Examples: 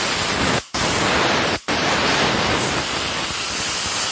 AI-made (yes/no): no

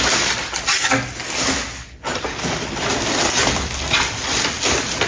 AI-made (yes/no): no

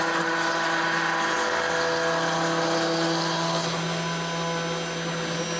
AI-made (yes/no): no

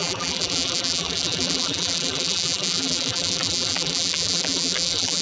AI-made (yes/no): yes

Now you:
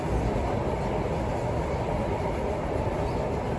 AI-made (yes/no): no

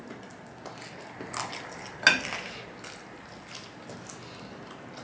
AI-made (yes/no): no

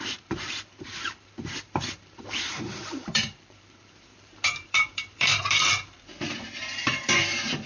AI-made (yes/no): yes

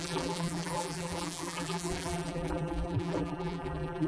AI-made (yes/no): yes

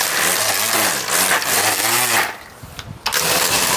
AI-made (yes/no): no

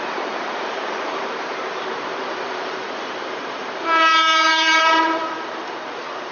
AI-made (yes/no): yes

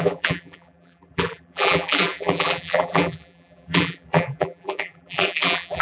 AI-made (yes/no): yes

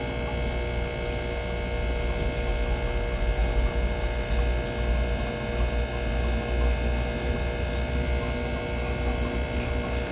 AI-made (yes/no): no